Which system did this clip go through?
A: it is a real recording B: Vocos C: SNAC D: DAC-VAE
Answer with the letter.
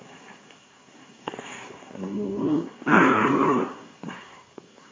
C